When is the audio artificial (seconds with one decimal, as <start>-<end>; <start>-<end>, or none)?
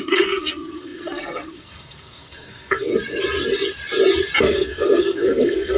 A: 0.0-2.9; 4.4-5.8